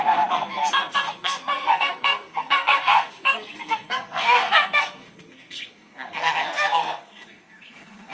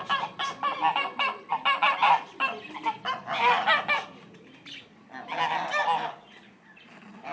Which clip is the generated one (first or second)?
first